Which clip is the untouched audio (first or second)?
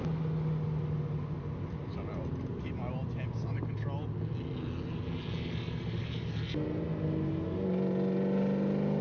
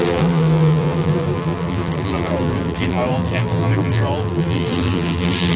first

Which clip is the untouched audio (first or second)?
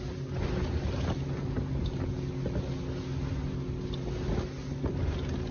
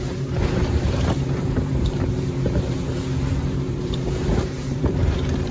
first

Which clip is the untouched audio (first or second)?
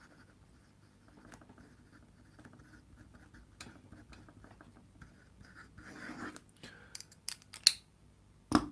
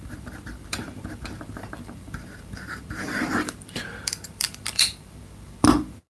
first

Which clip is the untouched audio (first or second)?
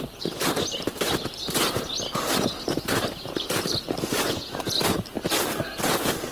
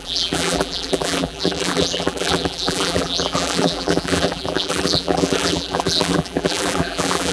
first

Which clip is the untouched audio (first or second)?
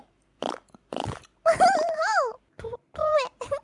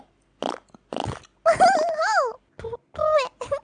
second